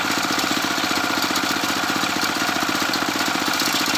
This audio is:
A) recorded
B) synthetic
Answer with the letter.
A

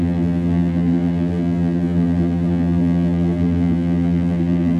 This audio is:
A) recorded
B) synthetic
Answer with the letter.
B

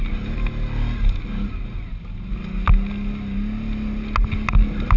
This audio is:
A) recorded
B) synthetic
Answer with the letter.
A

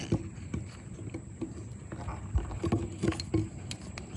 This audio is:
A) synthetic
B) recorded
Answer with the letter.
B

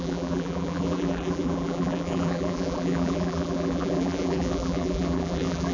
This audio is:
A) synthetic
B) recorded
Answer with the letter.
A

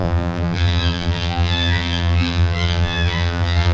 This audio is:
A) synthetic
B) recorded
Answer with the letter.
A